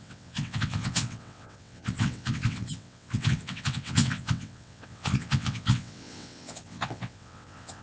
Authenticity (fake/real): fake